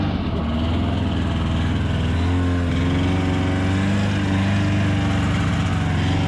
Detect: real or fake real